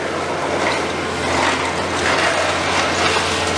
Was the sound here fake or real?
real